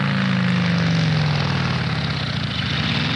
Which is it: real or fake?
real